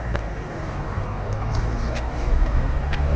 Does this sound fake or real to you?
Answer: fake